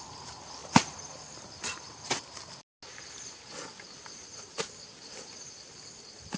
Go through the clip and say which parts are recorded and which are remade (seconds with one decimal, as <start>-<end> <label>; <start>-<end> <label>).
0.0-6.4 recorded